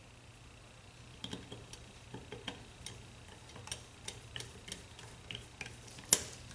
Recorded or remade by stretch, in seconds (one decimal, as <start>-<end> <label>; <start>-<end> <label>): 0.0-6.5 recorded